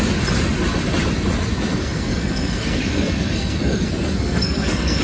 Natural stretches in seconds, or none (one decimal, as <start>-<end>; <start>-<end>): 0.0-1.7